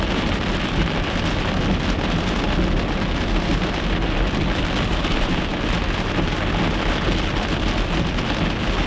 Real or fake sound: real